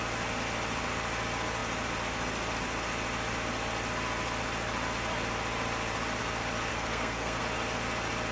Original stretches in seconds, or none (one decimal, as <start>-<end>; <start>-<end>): 0.0-6.7; 7.4-8.3